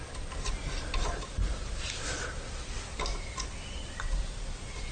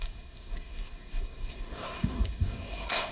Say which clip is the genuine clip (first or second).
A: first